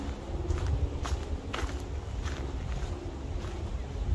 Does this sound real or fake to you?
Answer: real